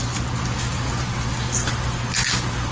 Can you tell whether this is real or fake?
real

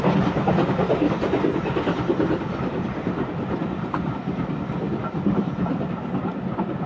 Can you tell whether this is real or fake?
real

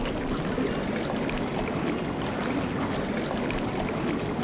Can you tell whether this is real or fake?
real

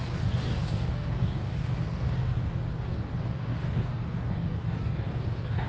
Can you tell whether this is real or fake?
fake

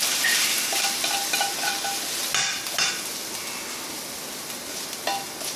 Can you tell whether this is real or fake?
real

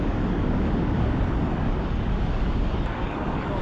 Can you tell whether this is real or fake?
fake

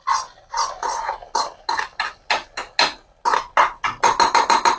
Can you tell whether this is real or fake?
real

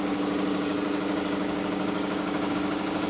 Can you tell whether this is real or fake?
fake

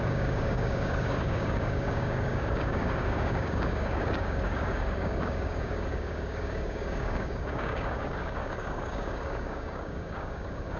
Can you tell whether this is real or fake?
fake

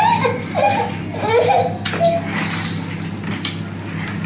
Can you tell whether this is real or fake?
real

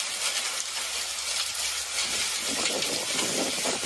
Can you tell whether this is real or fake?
real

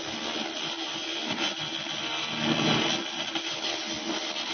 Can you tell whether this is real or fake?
real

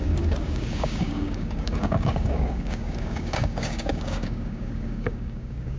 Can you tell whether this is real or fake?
fake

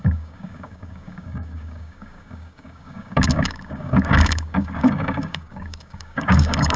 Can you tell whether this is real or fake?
fake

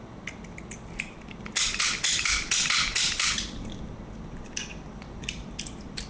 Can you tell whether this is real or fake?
real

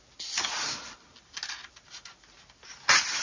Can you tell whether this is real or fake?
real